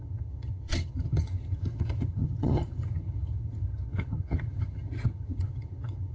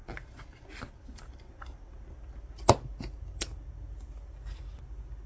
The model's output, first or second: first